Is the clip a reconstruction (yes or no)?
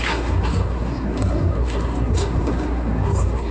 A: yes